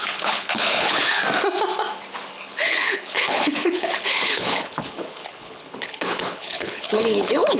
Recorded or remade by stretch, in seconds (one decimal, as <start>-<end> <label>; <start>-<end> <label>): 0.0-1.2 remade; 1.2-2.3 recorded; 2.3-7.6 remade